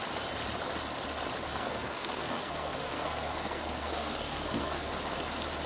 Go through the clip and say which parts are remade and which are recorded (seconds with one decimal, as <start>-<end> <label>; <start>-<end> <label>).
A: 0.0-1.5 recorded; 1.5-4.9 remade; 4.9-5.7 recorded

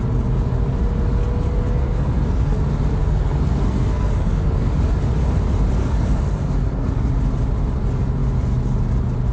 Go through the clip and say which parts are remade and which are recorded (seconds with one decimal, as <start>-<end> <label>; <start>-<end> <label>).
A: 0.0-1.8 recorded; 1.8-2.6 remade; 2.6-3.0 recorded; 3.0-4.7 remade; 4.7-5.8 recorded; 5.8-7.1 remade; 7.1-9.3 recorded

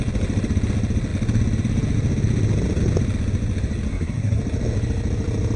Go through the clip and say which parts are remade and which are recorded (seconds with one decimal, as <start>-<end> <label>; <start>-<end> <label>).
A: 0.0-3.9 recorded; 3.9-4.4 remade; 4.4-5.6 recorded